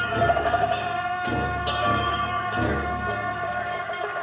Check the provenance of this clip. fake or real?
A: fake